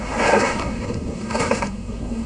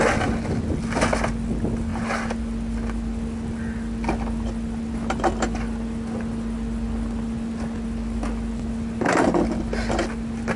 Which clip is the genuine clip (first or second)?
second